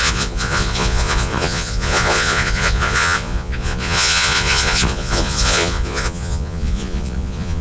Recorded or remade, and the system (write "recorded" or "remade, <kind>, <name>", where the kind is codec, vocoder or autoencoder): remade, vocoder, Vocos